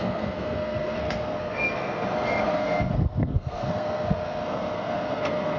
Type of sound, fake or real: fake